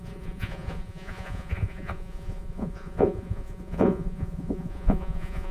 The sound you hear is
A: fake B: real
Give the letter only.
A